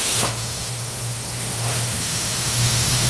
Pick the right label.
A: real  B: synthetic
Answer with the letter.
B